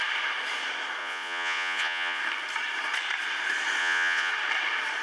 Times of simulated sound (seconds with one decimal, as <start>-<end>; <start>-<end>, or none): 1.0-2.2; 3.8-4.3